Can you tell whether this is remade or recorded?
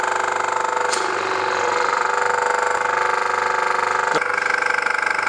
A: recorded